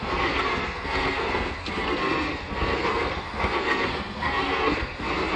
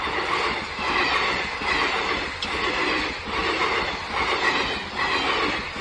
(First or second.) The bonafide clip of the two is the second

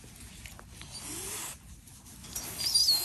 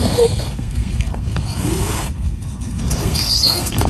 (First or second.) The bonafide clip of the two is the first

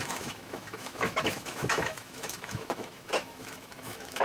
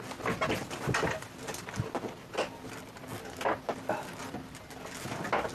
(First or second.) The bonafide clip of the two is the second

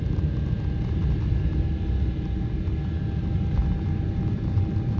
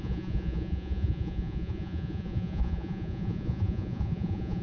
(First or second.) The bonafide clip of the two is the first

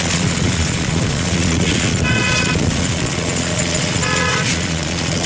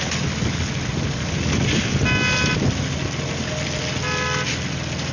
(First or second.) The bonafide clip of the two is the second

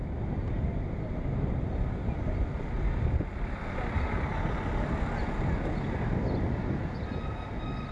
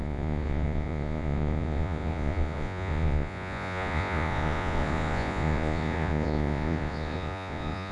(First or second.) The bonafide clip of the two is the first